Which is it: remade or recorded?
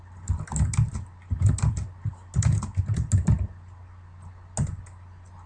recorded